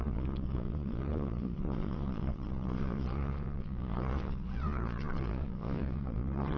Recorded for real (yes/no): no